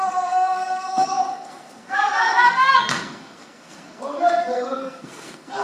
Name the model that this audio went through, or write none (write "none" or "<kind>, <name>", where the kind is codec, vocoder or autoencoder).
codec, SNAC